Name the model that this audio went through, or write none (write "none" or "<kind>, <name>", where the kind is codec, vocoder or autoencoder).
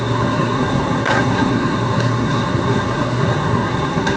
codec, SNAC